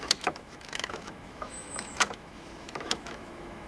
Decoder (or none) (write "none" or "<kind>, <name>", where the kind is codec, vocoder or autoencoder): autoencoder, DAC-VAE